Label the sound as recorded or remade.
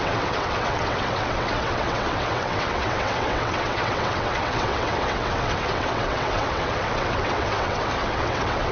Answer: remade